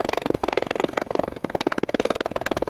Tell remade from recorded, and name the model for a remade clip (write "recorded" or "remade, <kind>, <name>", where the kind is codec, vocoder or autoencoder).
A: remade, codec, SNAC